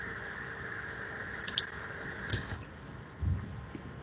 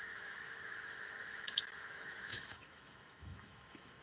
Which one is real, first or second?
first